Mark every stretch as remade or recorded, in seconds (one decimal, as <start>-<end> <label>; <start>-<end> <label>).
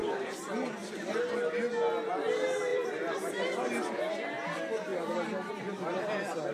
0.0-1.1 remade; 1.1-2.7 recorded; 2.7-4.0 remade; 4.0-6.5 recorded